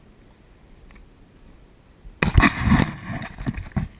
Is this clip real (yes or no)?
yes